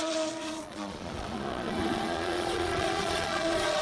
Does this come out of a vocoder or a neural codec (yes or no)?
yes